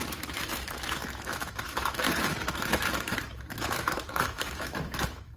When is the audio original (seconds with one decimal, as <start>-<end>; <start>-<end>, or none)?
none